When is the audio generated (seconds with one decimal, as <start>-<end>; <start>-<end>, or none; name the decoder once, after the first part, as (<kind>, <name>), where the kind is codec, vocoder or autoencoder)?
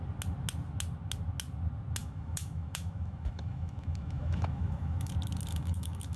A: 2.0-5.1 (autoencoder, DAC-VAE); 5.5-6.2